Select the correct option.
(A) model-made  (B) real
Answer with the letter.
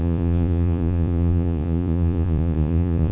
A